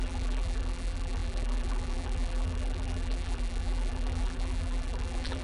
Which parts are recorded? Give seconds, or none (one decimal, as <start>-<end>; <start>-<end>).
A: none